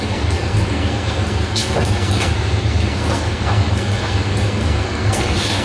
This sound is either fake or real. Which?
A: fake